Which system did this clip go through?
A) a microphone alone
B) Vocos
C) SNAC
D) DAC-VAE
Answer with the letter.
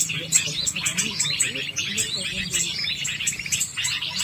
A